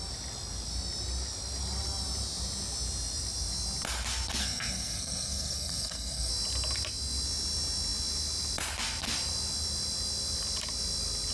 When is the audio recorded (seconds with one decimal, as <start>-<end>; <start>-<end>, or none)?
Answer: 0.0-4.4; 6.3-11.3